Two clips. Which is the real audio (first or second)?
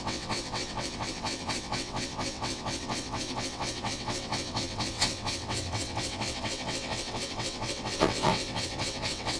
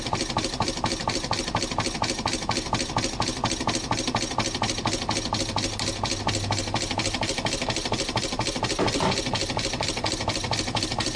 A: second